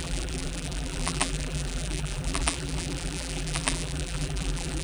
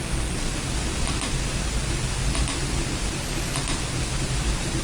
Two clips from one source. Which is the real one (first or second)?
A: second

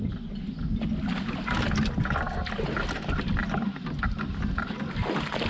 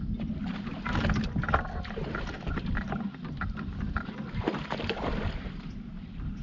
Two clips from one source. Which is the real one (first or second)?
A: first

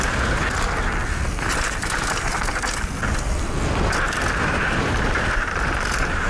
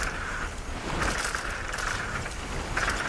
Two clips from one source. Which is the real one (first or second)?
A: first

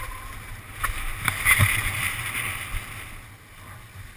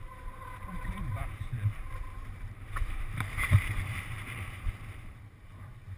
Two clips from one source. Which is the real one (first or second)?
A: first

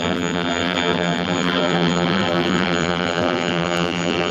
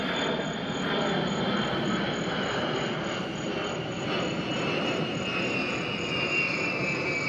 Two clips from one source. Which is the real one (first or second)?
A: second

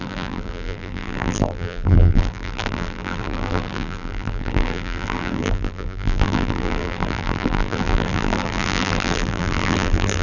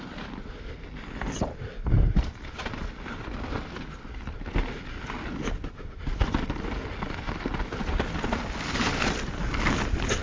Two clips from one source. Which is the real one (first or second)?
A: second